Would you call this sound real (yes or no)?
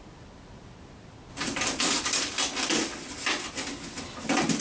yes